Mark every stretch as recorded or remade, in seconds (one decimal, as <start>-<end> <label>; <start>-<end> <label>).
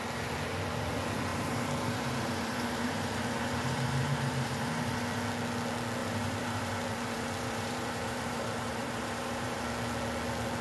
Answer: 0.0-1.3 recorded; 1.3-5.2 remade; 5.2-6.0 recorded; 6.0-9.6 remade; 9.6-10.6 recorded